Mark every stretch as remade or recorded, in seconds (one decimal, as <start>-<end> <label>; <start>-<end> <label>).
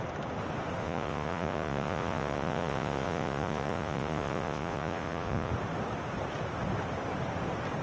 0.0-0.8 recorded; 0.8-5.5 remade; 5.5-7.8 recorded